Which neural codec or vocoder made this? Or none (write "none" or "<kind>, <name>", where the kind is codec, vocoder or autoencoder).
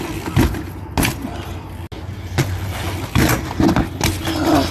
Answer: none